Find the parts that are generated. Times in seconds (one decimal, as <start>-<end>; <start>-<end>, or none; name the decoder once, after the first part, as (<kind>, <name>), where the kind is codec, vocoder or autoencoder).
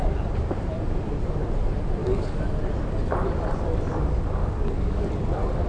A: 2.0-2.5 (codec, DAC); 4.4-5.1